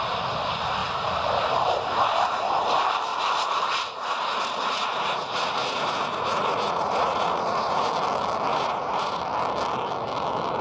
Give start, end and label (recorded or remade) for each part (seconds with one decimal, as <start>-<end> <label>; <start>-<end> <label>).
0.0-3.1 recorded; 3.1-7.9 remade; 7.9-8.5 recorded; 8.5-9.2 remade; 9.2-10.6 recorded